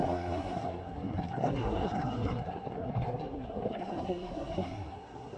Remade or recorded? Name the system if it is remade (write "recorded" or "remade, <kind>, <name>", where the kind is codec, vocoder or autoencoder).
remade, codec, SNAC